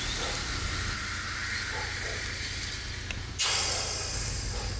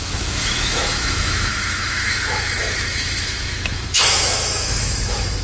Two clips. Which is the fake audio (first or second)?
second